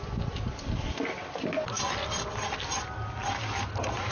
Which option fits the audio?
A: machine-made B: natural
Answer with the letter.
B